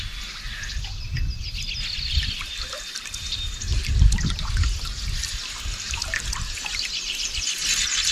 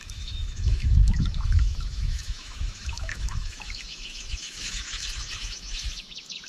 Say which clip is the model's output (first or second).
second